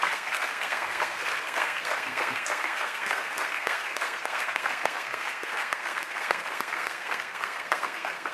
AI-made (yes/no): yes